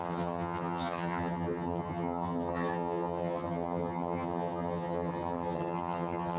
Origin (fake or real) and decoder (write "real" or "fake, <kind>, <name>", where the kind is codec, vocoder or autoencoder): fake, vocoder, HiFi-GAN